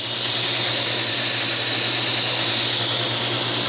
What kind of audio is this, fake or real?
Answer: fake